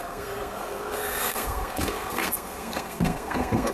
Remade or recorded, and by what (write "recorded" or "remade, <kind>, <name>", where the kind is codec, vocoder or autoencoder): remade, codec, SNAC